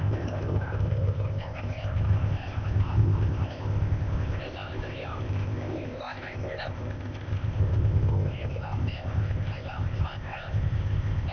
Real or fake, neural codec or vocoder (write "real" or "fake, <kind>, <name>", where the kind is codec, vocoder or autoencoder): fake, codec, ZipCodec